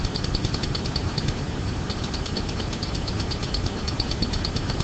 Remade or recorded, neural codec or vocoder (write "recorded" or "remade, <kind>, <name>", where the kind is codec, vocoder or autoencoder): recorded